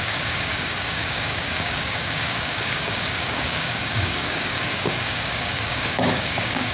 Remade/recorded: remade